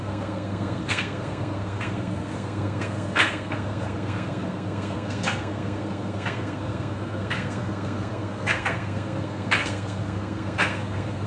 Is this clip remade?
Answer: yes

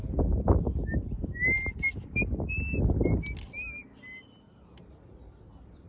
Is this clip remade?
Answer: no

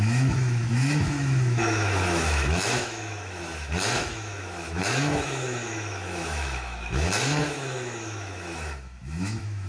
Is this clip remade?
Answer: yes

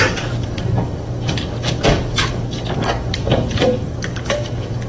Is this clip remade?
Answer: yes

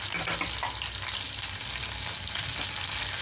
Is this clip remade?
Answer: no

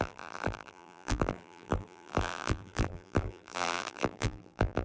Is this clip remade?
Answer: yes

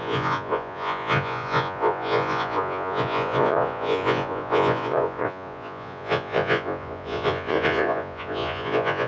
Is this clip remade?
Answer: yes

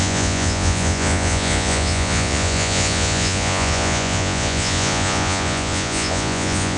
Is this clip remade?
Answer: yes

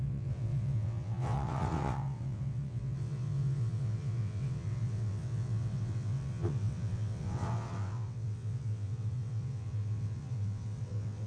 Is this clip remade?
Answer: yes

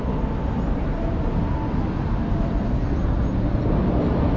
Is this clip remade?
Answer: no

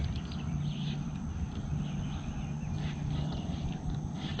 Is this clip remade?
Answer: no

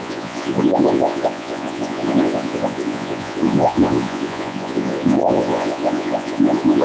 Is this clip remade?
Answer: yes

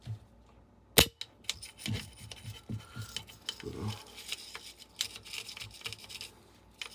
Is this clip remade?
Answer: no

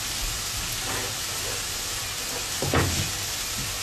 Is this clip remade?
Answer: no